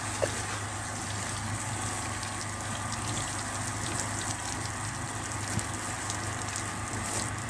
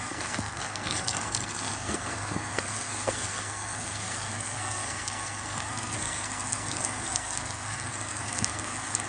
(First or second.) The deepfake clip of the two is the second